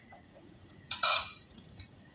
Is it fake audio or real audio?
fake